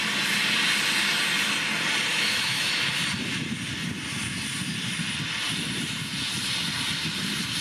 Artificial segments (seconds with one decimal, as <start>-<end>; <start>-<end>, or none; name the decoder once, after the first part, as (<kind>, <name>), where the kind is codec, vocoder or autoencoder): 2.1-2.8 (autoencoder, DAC-VAE)